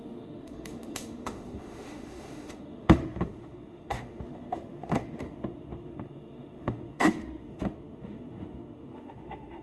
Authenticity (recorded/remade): remade